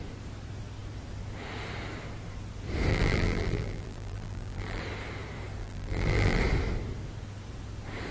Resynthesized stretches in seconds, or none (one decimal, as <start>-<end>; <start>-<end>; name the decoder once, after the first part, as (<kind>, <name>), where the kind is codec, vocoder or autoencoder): 2.9-4.8 (vocoder, BigVGAN v2); 5.6-6.4